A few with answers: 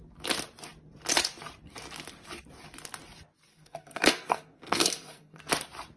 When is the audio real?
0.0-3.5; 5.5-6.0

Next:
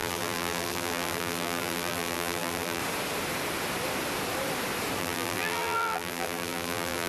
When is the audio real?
2.8-5.0

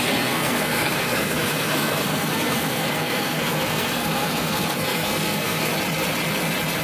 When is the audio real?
5.7-6.8

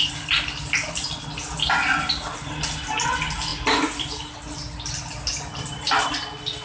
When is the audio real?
0.0-6.6

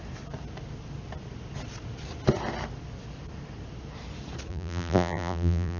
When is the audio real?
0.0-4.5

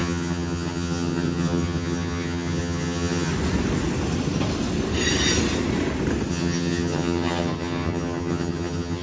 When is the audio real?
3.3-6.3